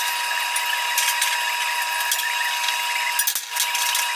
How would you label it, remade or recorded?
recorded